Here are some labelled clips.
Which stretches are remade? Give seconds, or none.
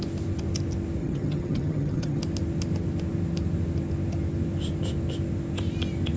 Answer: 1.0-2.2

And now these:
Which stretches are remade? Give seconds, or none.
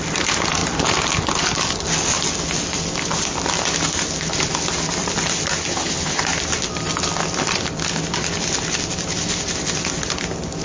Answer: 5.7-6.2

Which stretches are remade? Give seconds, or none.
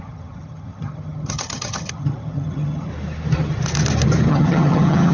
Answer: 0.0-2.9; 4.3-5.1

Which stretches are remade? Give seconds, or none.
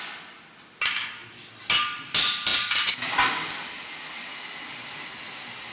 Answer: none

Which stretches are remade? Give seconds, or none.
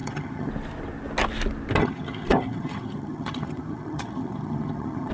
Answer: 0.0-0.5; 1.8-5.1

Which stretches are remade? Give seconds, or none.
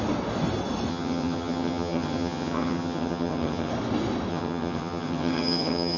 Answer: 0.9-3.7; 4.3-6.0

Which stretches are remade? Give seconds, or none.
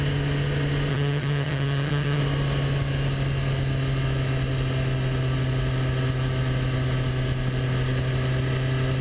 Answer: 0.9-2.2